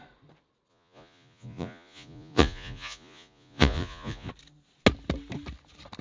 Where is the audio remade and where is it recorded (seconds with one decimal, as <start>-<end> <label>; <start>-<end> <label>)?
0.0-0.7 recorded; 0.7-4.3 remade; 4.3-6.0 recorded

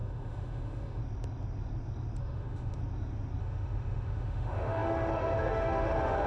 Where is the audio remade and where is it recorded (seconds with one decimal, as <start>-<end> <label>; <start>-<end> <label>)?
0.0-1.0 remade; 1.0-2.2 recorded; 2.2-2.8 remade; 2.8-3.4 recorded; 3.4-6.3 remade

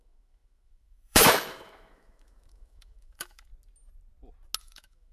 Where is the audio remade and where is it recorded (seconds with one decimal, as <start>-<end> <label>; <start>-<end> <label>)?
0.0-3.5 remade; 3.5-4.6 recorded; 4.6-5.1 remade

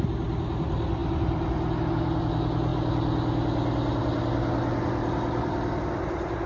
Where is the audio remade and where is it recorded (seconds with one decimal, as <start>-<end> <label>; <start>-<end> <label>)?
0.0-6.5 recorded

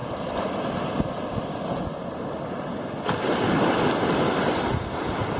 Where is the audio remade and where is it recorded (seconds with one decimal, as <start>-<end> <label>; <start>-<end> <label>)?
0.0-5.4 recorded

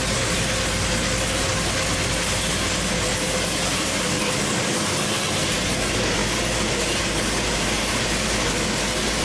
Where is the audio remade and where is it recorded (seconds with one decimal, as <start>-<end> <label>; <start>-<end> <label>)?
0.0-9.2 recorded

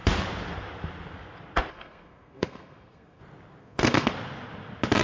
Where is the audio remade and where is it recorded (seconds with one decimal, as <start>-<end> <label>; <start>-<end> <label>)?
0.0-1.7 recorded; 1.7-3.2 remade; 3.2-3.6 recorded; 3.6-4.1 remade; 4.1-5.0 recorded

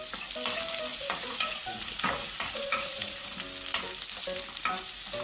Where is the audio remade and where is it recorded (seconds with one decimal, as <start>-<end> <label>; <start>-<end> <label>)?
0.0-0.9 recorded; 0.9-3.4 remade; 3.4-5.2 recorded